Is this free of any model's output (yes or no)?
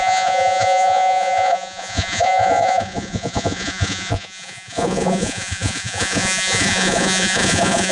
no